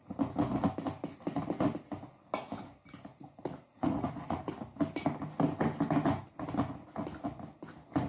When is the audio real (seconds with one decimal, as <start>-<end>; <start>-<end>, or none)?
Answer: 0.0-3.1; 4.5-8.1